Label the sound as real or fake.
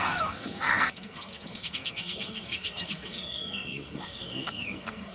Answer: fake